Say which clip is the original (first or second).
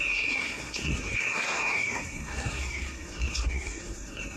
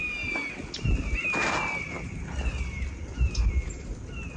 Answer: second